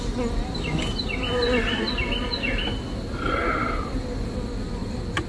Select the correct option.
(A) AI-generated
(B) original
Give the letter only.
B